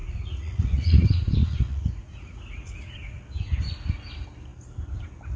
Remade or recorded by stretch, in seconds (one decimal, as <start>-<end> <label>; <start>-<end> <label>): 0.0-3.2 remade; 3.2-5.4 recorded